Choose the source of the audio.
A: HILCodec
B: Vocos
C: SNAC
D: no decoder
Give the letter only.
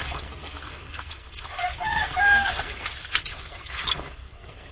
C